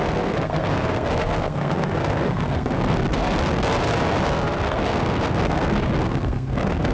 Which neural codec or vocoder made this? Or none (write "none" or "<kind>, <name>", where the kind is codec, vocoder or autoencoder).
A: codec, SNAC